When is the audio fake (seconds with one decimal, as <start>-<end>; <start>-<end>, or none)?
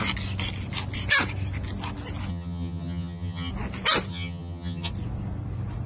2.3-3.5; 4.1-4.9